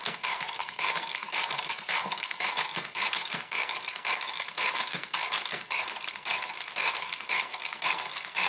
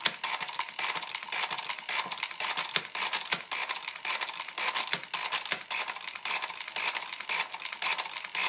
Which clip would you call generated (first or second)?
first